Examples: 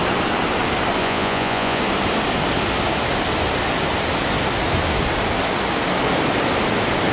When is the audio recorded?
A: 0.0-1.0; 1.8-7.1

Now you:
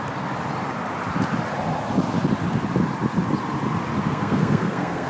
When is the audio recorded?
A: 0.0-4.0

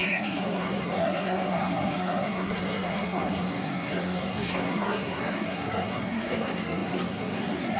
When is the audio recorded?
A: none

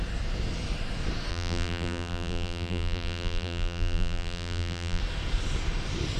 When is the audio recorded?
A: 0.0-1.3; 5.0-6.2

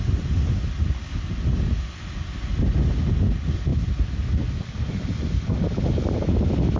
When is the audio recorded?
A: 0.0-6.8

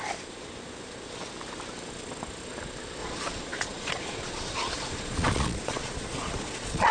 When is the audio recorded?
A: 0.0-3.0

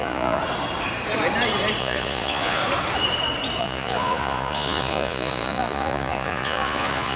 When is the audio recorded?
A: 0.4-1.8; 2.6-3.6

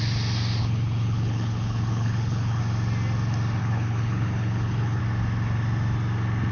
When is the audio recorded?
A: 0.0-0.6; 2.6-3.6; 5.0-6.5